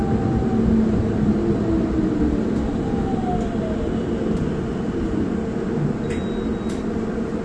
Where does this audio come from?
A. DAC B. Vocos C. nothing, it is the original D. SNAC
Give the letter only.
C